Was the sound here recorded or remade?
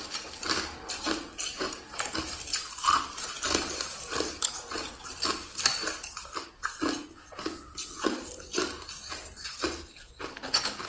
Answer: recorded